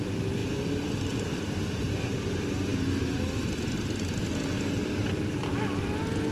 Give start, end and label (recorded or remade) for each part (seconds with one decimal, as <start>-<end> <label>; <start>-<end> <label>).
0.0-6.3 recorded